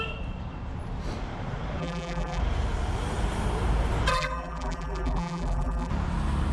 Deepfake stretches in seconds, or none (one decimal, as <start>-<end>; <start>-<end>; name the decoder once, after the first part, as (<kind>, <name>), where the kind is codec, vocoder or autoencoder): 1.8-2.4 (vocoder, BigVGAN v2); 4.1-5.9